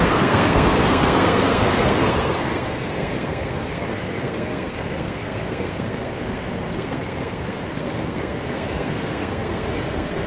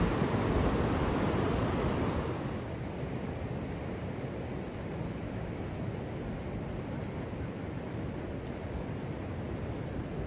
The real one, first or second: second